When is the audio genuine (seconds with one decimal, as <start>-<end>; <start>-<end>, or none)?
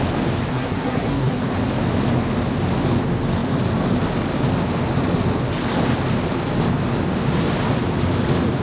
0.0-0.5; 1.4-8.6